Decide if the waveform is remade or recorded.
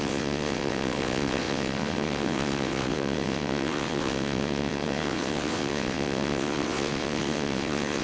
remade